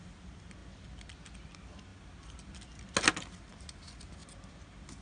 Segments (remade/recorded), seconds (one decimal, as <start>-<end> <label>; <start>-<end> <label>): 0.0-5.0 recorded